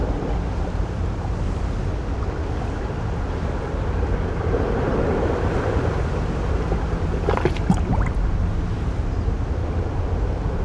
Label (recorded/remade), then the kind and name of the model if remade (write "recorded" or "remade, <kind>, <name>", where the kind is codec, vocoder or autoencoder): recorded